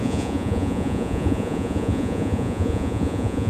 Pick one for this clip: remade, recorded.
remade